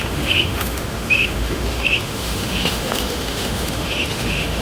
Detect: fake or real fake